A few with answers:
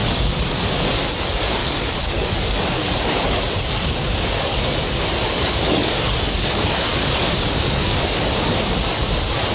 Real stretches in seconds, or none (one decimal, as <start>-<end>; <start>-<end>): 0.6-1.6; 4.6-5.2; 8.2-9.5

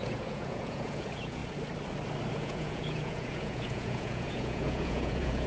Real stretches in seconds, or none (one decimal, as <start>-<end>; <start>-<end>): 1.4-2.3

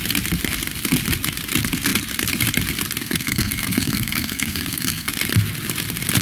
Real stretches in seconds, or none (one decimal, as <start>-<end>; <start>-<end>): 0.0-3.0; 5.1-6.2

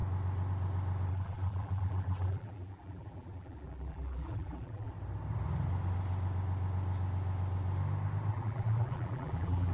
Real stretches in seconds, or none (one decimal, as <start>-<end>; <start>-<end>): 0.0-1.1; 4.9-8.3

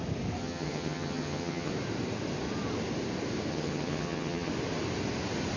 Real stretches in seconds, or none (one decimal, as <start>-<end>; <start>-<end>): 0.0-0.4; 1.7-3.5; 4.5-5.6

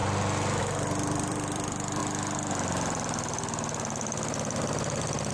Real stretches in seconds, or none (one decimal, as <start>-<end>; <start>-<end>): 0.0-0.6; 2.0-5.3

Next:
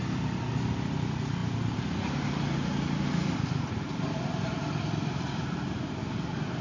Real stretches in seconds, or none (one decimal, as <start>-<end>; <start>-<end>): 0.0-6.6

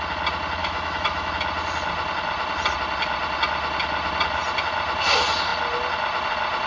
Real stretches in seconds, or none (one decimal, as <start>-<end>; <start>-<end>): 0.0-0.6; 1.3-6.7